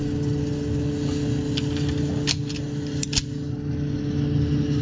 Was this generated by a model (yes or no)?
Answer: no